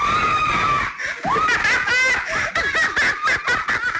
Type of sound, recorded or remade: recorded